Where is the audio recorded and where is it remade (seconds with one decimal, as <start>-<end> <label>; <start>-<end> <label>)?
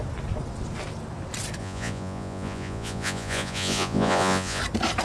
0.0-1.6 recorded; 1.6-4.6 remade; 4.6-5.0 recorded